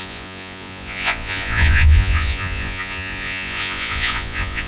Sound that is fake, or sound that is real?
fake